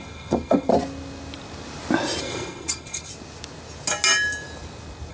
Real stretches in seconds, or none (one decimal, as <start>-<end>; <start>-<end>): 0.7-2.2; 3.1-5.1